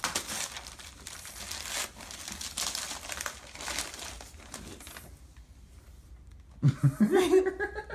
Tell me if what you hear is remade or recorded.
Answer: recorded